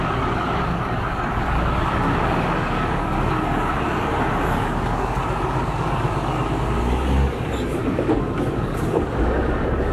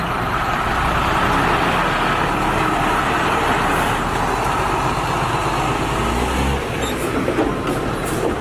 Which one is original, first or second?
second